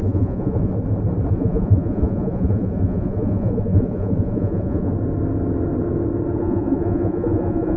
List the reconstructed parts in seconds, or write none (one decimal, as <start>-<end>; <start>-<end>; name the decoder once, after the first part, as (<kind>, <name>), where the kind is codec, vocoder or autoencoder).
0.0-0.7 (vocoder, Vocos); 1.3-4.9; 6.4-7.8